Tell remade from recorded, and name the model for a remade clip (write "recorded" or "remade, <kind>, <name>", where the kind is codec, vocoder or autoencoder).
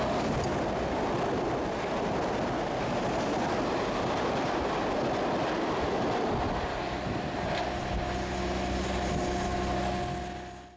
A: recorded